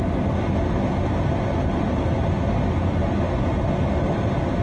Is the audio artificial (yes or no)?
no